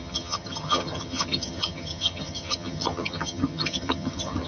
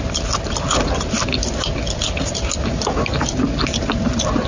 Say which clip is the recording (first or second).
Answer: second